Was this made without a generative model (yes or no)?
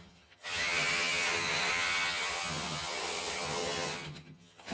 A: no